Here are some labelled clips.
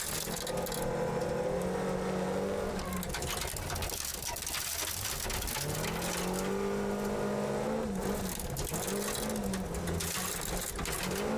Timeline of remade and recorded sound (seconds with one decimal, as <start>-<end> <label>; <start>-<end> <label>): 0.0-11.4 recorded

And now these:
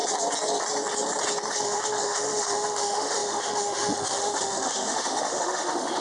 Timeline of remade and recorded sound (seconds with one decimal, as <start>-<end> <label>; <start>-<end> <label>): 0.0-1.5 recorded; 1.5-6.0 remade

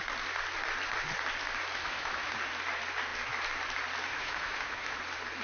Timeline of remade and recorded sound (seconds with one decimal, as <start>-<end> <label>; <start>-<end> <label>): 0.0-1.8 recorded; 1.8-2.3 remade; 2.3-4.1 recorded; 4.1-5.0 remade; 5.0-5.4 recorded